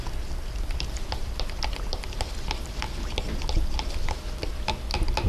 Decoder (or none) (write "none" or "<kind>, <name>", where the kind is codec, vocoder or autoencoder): none